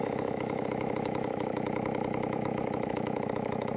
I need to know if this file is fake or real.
fake